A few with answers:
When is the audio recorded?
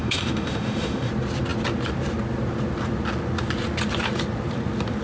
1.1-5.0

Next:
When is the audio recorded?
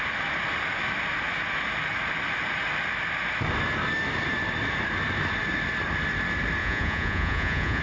0.0-6.6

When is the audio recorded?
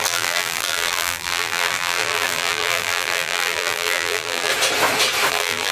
4.5-5.3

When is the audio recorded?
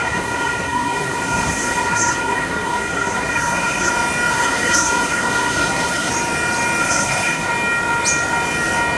3.9-4.3; 6.1-6.8; 7.5-9.0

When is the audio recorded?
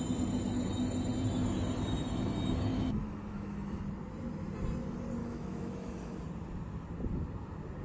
0.0-2.7; 3.8-5.2; 6.2-7.8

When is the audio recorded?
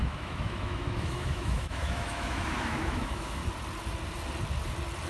3.4-5.1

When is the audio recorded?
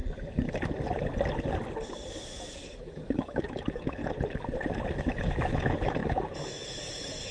0.0-2.1; 4.0-4.9